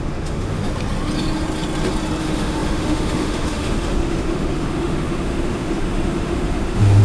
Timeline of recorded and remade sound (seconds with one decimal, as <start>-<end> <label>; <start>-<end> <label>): 0.0-0.6 remade; 0.6-2.2 recorded; 2.2-7.0 remade